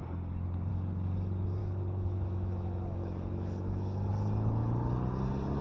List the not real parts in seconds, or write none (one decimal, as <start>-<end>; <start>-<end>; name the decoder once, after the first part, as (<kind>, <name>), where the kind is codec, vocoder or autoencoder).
1.6-4.1 (autoencoder, DAC-VAE)